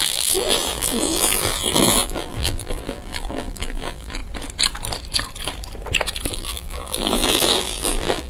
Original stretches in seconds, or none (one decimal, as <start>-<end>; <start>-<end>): 4.2-6.3